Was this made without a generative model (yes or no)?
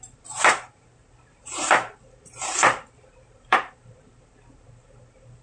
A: no